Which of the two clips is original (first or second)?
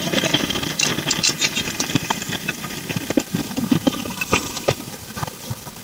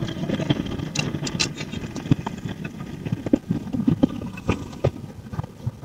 second